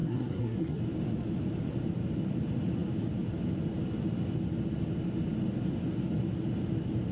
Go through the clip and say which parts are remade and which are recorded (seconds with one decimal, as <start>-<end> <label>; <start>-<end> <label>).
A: 0.0-0.8 remade; 0.8-7.1 recorded